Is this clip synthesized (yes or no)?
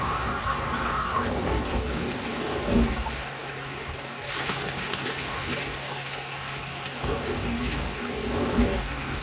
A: yes